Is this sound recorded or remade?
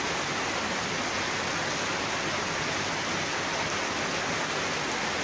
recorded